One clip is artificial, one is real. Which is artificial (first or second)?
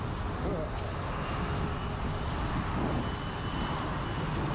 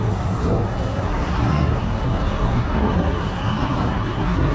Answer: second